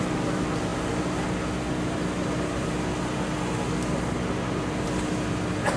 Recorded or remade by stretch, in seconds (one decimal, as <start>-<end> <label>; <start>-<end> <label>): 0.0-5.8 recorded